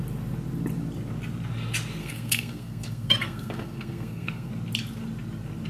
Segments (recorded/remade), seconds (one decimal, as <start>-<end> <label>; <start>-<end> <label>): 0.0-2.0 recorded; 2.0-4.5 remade; 4.5-5.7 recorded